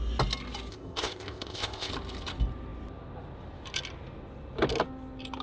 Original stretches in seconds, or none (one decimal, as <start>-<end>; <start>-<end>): 0.0-0.7; 1.9-5.4